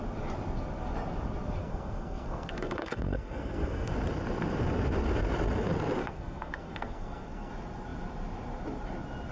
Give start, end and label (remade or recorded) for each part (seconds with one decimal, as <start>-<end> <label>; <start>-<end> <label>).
0.0-1.6 recorded; 1.6-3.9 remade; 3.9-6.0 recorded; 6.0-7.5 remade; 7.5-9.3 recorded